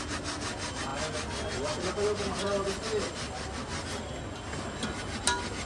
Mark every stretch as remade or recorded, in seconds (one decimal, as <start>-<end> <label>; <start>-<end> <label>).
0.0-5.7 recorded